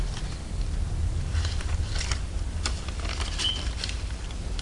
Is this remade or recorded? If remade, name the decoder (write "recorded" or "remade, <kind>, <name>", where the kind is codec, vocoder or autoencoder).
recorded